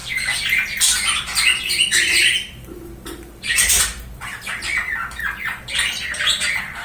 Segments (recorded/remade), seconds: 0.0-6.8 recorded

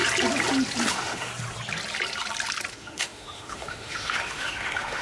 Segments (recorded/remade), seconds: 0.0-0.9 recorded; 0.9-1.3 remade; 1.3-2.7 recorded; 2.7-5.0 remade